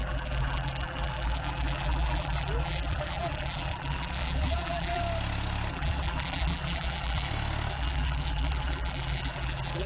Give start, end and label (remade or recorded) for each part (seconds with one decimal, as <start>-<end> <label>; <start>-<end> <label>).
0.0-5.0 remade; 5.0-5.7 recorded; 5.7-7.3 remade; 7.3-7.7 recorded; 7.7-9.9 remade

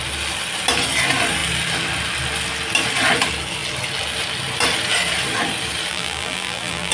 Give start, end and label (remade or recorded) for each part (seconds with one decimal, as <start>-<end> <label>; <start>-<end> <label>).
0.0-5.9 recorded; 5.9-6.9 remade

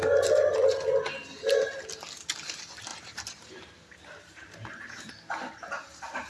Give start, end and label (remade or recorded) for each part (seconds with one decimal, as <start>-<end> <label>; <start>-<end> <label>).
0.0-2.9 recorded; 2.9-5.1 remade; 5.1-6.3 recorded

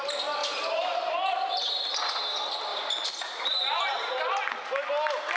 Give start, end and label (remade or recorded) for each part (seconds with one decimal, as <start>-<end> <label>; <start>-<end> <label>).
0.0-0.4 recorded; 0.4-1.7 remade; 1.7-2.7 recorded; 2.7-4.4 remade; 4.4-5.4 recorded

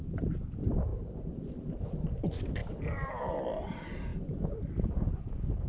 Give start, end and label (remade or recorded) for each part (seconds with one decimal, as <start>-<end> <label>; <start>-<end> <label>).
0.0-0.9 recorded; 0.9-1.5 remade; 1.5-2.6 recorded; 2.6-3.1 remade; 3.1-5.7 recorded